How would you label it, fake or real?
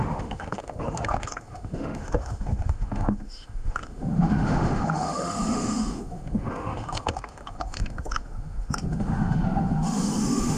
fake